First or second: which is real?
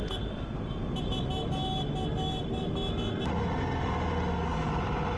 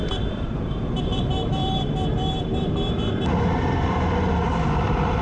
first